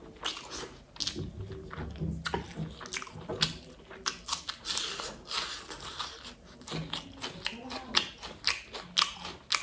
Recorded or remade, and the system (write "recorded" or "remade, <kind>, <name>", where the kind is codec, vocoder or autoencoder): recorded